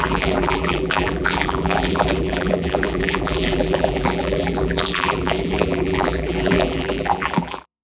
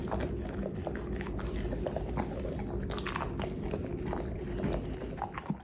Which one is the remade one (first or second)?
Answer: first